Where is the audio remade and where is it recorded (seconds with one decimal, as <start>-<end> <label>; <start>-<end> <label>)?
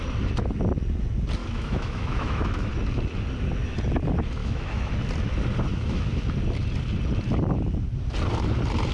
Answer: 0.0-1.4 recorded; 1.4-2.7 remade; 2.7-4.4 recorded; 4.4-4.9 remade; 4.9-5.7 recorded; 5.7-6.2 remade; 6.2-8.9 recorded